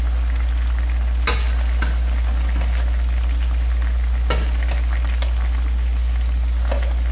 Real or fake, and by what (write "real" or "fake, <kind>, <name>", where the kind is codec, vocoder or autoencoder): real